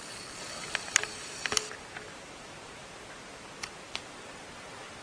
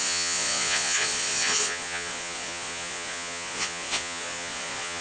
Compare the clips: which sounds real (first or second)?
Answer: first